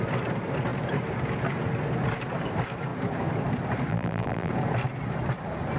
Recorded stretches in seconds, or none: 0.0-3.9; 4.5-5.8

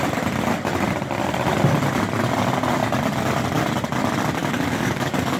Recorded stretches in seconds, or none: 0.0-4.4

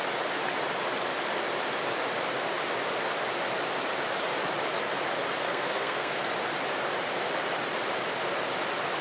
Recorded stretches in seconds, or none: 0.0-5.4; 6.3-9.0

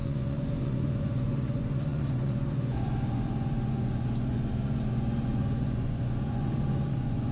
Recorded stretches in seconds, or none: none

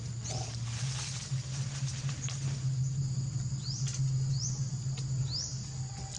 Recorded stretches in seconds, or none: 0.0-1.5; 2.8-6.2